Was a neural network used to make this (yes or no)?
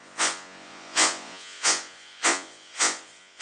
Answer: yes